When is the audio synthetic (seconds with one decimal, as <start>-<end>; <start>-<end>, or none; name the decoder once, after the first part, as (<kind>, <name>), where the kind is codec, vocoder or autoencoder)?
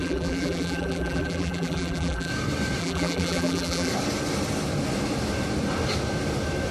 0.0-2.3 (vocoder, BigVGAN v2); 2.8-3.9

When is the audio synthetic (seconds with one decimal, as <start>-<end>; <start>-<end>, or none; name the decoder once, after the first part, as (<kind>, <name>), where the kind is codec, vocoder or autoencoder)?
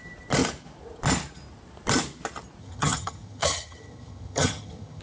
2.6-5.0 (vocoder, HiFi-GAN)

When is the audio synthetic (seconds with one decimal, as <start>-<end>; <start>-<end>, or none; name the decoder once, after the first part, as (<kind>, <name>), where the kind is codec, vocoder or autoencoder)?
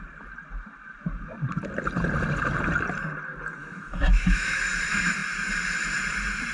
3.6-4.6 (autoencoder, DAC-VAE)